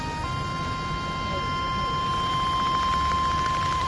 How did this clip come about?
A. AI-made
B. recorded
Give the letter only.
B